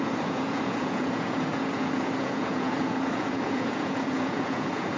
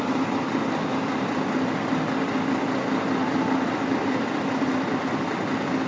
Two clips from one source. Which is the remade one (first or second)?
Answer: first